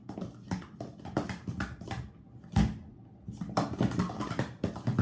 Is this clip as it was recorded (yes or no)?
yes